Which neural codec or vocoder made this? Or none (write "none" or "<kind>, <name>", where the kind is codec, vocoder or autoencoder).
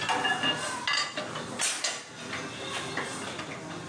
none